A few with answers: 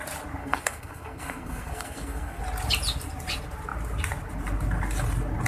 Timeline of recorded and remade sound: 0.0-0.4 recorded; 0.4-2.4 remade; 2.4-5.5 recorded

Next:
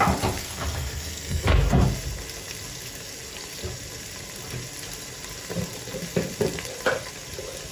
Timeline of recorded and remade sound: 0.0-0.4 recorded; 0.4-1.8 remade; 1.8-7.7 recorded

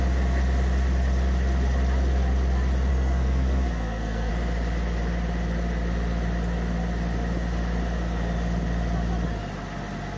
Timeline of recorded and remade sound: 0.0-2.9 recorded; 2.9-4.3 remade; 4.3-10.2 recorded

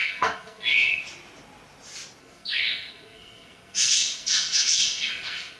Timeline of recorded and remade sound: 0.0-1.0 remade; 1.0-2.2 recorded; 2.2-5.6 remade

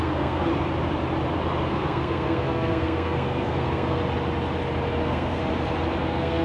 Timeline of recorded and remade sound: 0.0-0.5 remade; 0.5-1.7 recorded; 1.7-4.0 remade; 4.0-5.0 recorded; 5.0-5.4 remade; 5.4-6.0 recorded; 6.0-6.4 remade